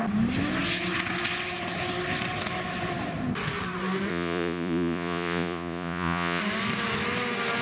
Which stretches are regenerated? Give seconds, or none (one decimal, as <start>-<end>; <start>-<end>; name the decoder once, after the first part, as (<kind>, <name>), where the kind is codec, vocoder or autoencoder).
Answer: 4.1-6.4 (vocoder, Vocos)